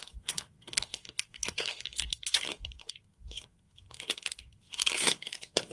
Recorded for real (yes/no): no